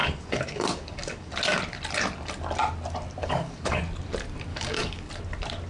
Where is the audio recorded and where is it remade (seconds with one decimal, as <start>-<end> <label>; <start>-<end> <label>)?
0.0-1.3 remade; 1.3-3.2 recorded; 3.2-3.8 remade; 3.8-4.5 recorded; 4.5-5.1 remade; 5.1-5.7 recorded